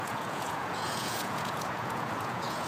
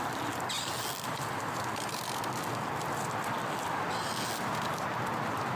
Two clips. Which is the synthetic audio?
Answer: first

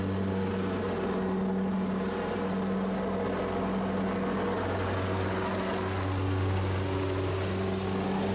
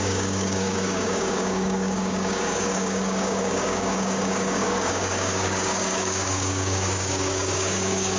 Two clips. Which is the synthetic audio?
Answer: second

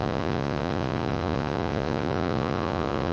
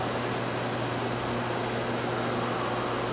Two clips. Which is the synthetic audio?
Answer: first